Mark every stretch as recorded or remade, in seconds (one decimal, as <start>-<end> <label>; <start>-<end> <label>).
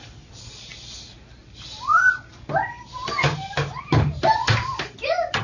0.0-0.7 remade; 0.7-1.4 recorded; 1.4-1.9 remade; 1.9-3.8 recorded; 3.8-5.4 remade